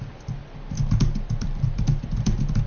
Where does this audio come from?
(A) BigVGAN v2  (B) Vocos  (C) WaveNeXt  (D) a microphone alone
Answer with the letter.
A